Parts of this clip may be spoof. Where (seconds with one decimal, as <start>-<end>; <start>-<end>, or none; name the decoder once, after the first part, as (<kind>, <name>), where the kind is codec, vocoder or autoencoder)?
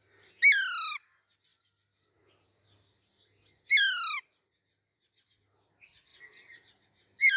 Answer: none